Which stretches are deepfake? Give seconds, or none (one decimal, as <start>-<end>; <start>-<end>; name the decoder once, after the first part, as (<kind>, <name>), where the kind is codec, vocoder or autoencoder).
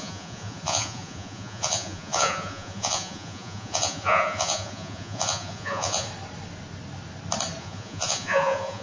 0.0-6.1 (vocoder, Vocos); 7.6-8.8